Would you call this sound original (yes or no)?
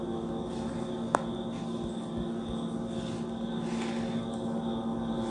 yes